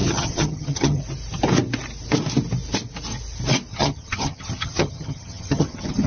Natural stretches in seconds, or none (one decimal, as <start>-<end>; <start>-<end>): 1.0-3.7